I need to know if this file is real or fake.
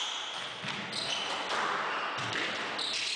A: real